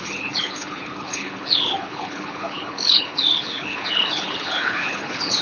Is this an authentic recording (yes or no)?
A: no